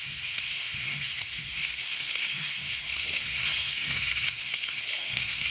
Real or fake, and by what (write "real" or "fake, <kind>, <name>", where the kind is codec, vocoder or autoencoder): fake, codec, SNAC